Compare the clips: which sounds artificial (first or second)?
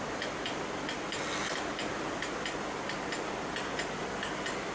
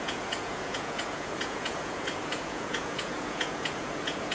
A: second